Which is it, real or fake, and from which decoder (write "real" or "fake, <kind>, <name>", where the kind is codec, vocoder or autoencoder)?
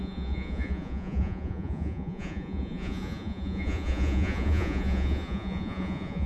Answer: fake, vocoder, Vocos